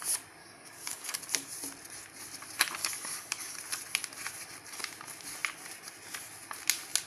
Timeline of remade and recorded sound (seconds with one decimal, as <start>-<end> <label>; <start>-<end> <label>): 0.0-0.4 recorded; 0.4-1.2 remade; 1.2-2.8 recorded; 2.8-3.6 remade; 3.6-7.1 recorded